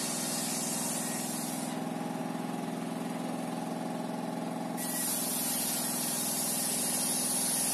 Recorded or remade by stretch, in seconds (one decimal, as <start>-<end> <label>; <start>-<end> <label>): 0.0-7.7 recorded